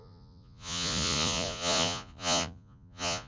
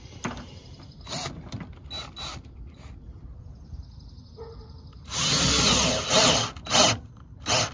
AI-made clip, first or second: first